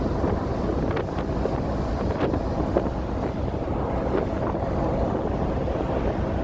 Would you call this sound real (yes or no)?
yes